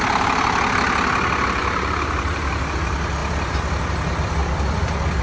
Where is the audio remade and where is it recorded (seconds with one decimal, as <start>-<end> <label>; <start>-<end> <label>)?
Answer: 0.0-1.6 recorded; 1.6-2.5 remade; 2.5-3.2 recorded; 3.2-3.8 remade; 3.8-5.2 recorded